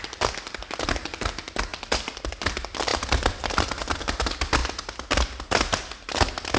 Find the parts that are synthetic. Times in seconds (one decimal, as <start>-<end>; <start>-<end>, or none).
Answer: 2.9-4.0